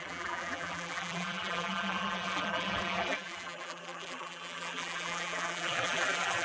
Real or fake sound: fake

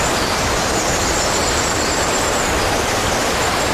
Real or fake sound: fake